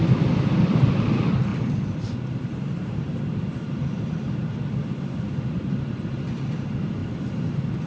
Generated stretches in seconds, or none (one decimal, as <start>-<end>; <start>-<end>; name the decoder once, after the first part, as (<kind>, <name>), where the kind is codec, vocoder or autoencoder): 1.5-3.1 (vocoder, BigVGAN v2)